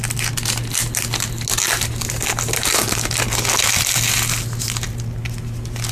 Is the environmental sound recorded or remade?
recorded